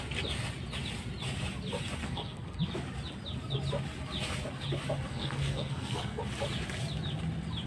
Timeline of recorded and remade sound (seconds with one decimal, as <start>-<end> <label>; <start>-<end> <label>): 0.0-2.0 recorded; 2.0-2.6 remade; 2.6-5.1 recorded; 5.1-6.2 remade; 6.2-7.7 recorded